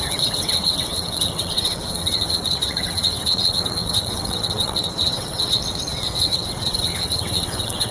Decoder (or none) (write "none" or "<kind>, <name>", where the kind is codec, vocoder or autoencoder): vocoder, WaveNeXt